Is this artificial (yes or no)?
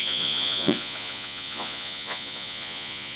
yes